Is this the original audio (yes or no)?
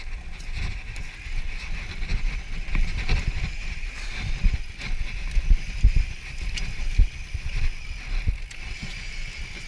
yes